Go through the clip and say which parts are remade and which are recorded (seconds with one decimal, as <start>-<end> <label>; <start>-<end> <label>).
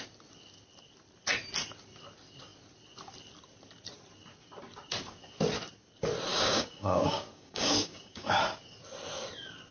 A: 0.0-6.3 recorded; 6.3-8.4 remade; 8.4-9.7 recorded